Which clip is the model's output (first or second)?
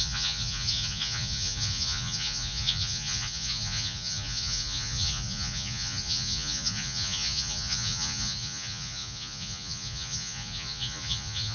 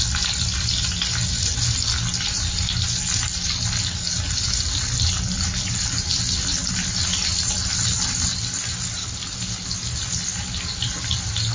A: first